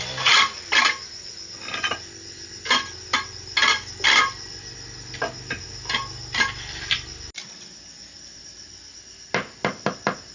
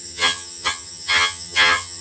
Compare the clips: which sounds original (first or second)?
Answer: first